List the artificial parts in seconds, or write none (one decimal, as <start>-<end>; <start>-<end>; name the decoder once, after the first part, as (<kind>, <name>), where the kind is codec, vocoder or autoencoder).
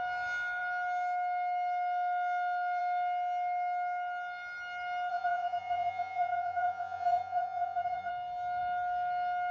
5.1-8.1 (vocoder, Vocos)